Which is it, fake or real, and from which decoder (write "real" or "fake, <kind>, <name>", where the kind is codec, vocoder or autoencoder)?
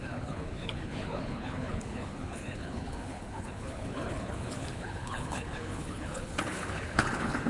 fake, codec, HILCodec